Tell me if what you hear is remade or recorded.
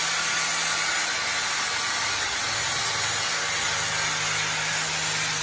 recorded